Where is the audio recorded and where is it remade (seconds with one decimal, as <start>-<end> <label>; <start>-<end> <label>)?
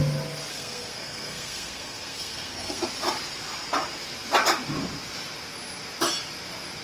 0.0-0.5 recorded; 0.5-2.8 remade; 2.8-6.8 recorded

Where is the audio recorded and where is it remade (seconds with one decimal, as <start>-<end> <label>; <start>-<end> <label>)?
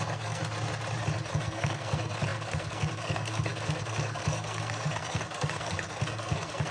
0.0-0.4 remade; 0.4-1.3 recorded; 1.3-6.7 remade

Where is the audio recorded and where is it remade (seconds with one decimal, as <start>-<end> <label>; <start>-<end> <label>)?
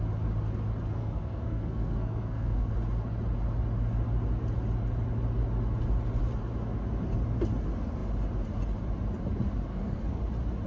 0.0-1.0 recorded; 1.0-2.7 remade; 2.7-9.7 recorded; 9.7-10.2 remade; 10.2-10.7 recorded